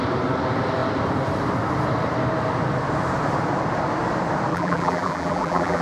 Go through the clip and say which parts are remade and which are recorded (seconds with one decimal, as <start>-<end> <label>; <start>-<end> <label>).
0.0-4.5 recorded; 4.5-5.8 remade